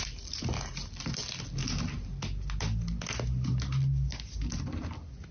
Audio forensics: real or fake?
real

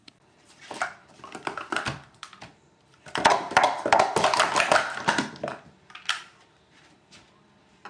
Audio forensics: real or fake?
fake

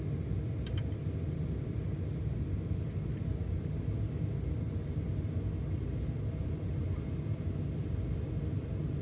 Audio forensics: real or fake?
real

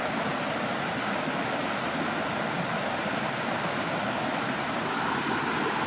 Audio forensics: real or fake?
real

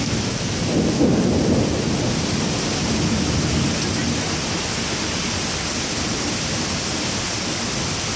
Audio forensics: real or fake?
real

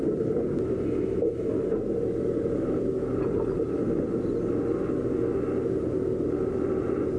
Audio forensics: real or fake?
real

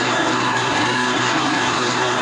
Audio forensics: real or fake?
fake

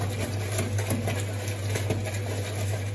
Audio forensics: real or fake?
real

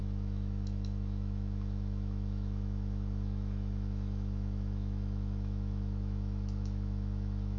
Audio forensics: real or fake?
fake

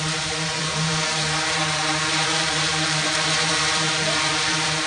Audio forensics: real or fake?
fake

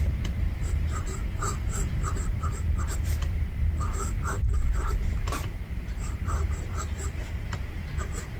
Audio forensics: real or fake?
fake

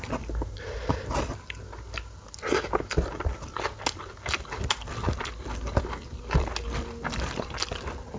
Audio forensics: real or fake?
real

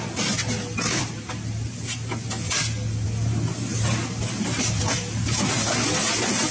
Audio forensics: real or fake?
real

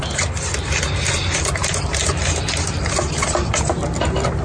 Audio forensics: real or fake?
real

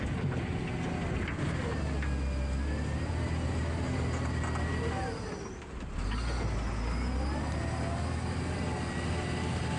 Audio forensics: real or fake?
real